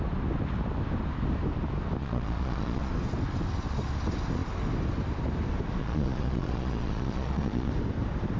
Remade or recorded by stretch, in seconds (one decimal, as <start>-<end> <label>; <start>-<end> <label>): 0.0-2.0 recorded; 2.0-2.9 remade; 2.9-5.8 recorded; 5.8-7.7 remade; 7.7-8.4 recorded